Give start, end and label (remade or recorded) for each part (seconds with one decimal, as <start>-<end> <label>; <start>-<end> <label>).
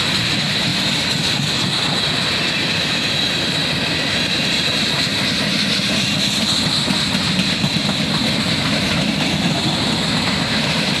0.0-0.7 remade; 0.7-2.7 recorded; 2.7-3.6 remade; 3.6-4.2 recorded; 4.2-5.1 remade; 5.1-9.7 recorded; 9.7-11.0 remade